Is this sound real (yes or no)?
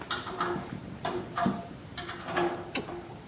no